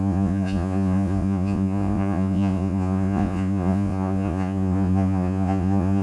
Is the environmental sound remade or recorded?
remade